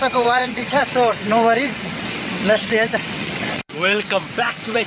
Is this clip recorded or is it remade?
remade